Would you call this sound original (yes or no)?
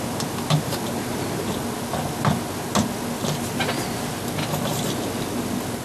yes